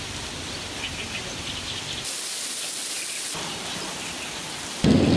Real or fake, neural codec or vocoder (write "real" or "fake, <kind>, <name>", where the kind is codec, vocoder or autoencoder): real